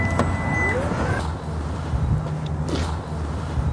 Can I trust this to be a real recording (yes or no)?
yes